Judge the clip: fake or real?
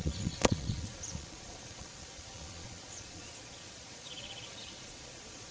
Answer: fake